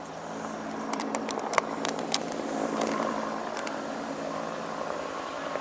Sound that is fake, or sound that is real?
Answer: fake